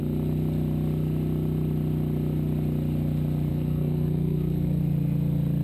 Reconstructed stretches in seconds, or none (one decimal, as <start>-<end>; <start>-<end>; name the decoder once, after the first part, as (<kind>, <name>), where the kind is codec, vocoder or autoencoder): 3.5-4.8 (codec, SNAC)